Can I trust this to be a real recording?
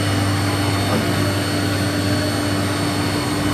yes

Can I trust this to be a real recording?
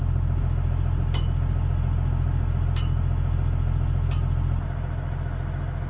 yes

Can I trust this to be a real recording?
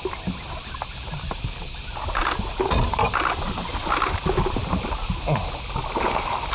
yes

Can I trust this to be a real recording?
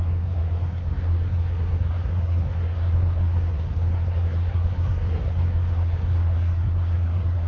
no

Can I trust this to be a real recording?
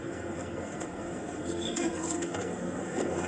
no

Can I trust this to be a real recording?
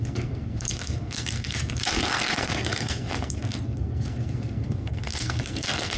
no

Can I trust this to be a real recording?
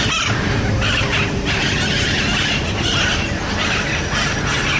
yes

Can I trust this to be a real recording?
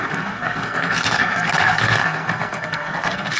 no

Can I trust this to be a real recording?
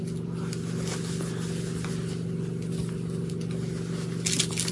yes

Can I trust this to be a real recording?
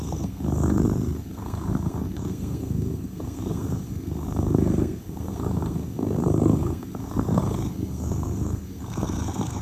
no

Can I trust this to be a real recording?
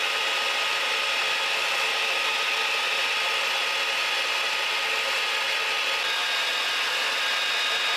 yes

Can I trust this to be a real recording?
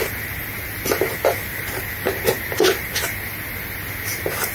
yes